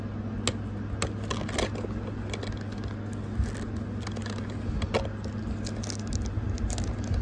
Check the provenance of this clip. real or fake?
real